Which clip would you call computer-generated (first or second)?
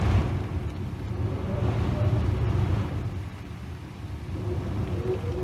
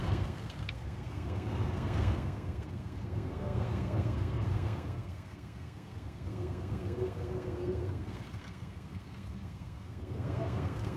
second